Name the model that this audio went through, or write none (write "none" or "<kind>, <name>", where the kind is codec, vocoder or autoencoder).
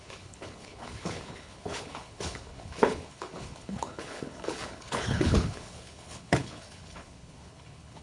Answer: codec, HILCodec